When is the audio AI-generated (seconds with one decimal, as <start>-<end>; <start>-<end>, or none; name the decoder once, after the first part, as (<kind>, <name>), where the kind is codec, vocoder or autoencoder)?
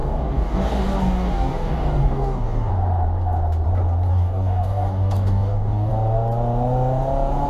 0.0-2.7 (codec, DAC); 4.1-5.9